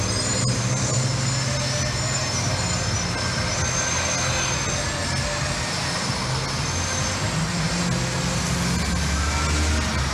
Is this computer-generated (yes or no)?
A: no